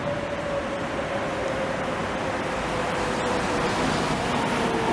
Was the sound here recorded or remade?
recorded